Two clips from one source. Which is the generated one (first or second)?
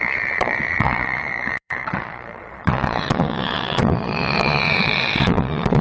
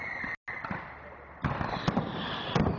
first